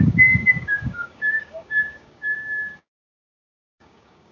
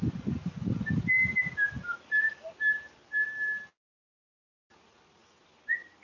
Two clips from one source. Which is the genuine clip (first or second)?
second